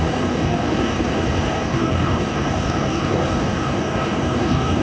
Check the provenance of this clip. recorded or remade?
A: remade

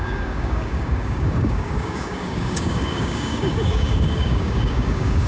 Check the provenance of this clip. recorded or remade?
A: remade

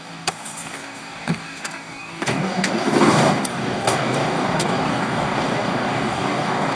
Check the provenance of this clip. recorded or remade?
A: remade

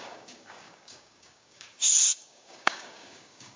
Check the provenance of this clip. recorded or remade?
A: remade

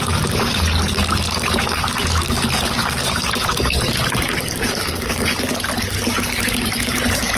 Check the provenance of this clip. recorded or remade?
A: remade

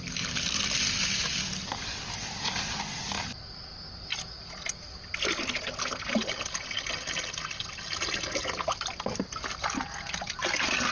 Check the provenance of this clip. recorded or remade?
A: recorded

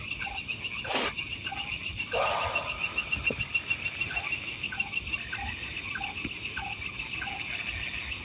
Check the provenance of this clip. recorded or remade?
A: recorded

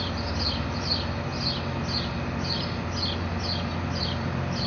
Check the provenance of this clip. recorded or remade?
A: recorded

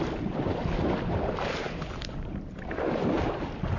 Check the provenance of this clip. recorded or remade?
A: recorded